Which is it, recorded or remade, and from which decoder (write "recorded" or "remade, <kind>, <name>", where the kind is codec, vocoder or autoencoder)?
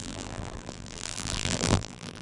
remade, vocoder, BigVGAN v2